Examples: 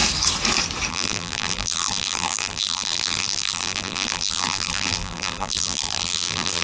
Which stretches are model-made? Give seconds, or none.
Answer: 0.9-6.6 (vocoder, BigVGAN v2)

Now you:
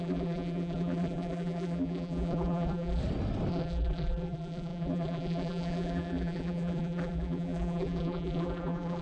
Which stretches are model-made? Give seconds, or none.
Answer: 0.0-3.0 (vocoder, BigVGAN v2); 3.5-9.0

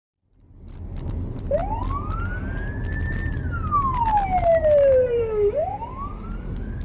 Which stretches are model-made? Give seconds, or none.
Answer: 4.5-5.9 (vocoder, BigVGAN v2)

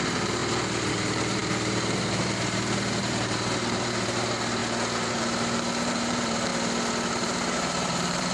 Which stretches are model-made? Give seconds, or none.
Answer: 0.0-4.6 (vocoder, BigVGAN v2); 5.1-6.5; 7.1-8.3

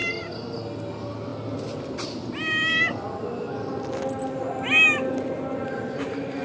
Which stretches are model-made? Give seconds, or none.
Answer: none

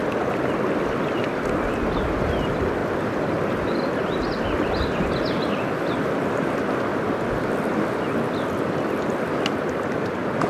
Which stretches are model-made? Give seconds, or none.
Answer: none

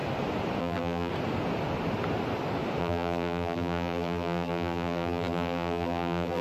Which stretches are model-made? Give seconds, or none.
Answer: 0.6-1.1 (vocoder, BigVGAN v2); 2.8-6.4

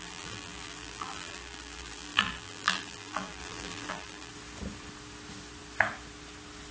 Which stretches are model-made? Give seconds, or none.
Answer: 0.0-4.3 (vocoder, BigVGAN v2)